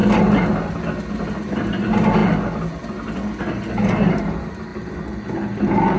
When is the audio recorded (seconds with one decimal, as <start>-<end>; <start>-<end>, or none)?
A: 0.0-6.0